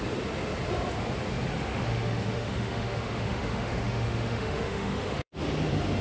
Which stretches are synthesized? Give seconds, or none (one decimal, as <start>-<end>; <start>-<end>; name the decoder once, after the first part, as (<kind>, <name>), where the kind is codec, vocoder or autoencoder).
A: 1.7-5.3 (autoencoder, DAC-VAE)

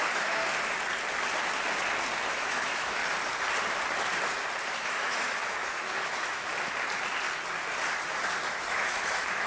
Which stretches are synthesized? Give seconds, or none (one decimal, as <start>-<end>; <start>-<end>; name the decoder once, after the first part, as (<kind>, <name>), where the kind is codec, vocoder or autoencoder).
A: 0.0-0.4 (autoencoder, DAC-VAE); 2.3-3.0; 4.7-6.5; 8.6-9.5

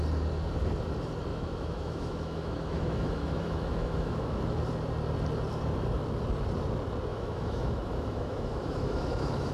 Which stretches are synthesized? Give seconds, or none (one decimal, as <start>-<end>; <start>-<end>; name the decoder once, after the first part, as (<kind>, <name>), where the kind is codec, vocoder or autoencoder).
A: 1.3-4.4 (autoencoder, DAC-VAE); 7.1-9.5

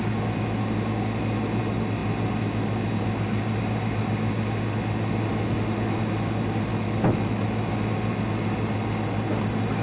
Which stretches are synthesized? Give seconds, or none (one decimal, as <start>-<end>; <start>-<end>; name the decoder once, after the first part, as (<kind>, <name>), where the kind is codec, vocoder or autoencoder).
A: 6.7-7.7 (autoencoder, DAC-VAE)

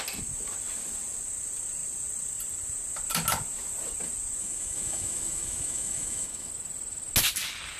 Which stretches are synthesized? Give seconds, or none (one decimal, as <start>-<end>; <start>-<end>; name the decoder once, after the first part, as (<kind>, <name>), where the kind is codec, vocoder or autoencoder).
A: 4.4-6.5 (autoencoder, DAC-VAE)